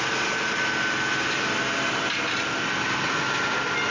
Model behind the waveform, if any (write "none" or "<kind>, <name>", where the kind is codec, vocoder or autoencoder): none